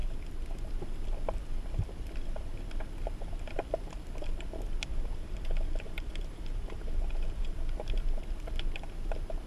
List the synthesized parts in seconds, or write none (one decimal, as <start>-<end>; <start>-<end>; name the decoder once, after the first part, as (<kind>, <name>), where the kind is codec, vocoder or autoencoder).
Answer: 4.9-7.5 (vocoder, BigVGAN v2)